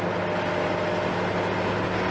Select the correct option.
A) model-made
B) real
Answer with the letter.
B